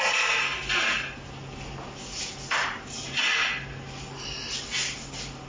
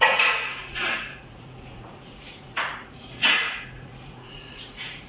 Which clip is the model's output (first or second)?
second